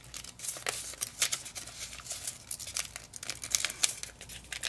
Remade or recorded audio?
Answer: recorded